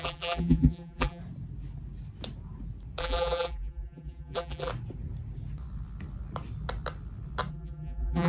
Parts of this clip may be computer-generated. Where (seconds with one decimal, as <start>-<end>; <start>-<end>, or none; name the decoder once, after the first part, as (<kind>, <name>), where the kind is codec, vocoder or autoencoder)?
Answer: 0.0-1.2 (vocoder, BigVGAN v2); 3.0-4.7; 7.5-8.3